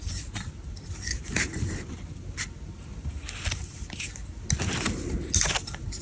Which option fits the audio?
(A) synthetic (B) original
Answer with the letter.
B